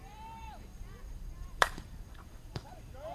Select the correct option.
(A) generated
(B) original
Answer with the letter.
A